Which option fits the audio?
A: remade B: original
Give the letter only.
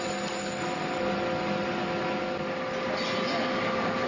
B